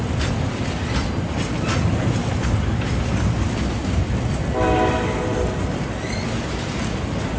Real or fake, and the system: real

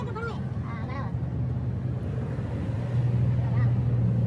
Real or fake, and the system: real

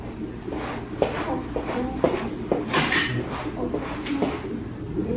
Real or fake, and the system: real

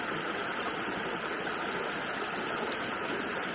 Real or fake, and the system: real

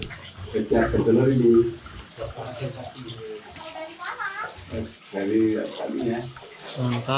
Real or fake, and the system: real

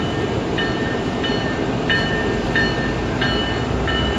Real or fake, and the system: fake, vocoder, BigVGAN v2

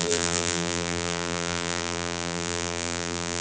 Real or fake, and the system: fake, vocoder, BigVGAN v2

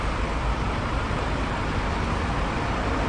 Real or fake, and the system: fake, vocoder, BigVGAN v2